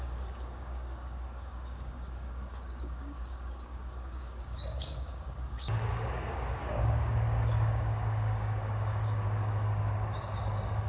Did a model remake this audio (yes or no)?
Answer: yes